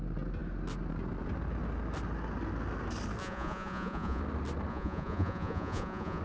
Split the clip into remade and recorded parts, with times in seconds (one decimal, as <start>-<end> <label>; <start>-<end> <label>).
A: 0.0-3.2 recorded; 3.2-4.2 remade; 4.2-4.7 recorded; 4.7-6.2 remade